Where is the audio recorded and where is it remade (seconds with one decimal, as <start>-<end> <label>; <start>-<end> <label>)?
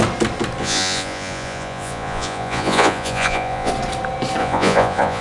0.0-0.6 recorded; 0.6-3.7 remade; 3.7-4.4 recorded; 4.4-5.2 remade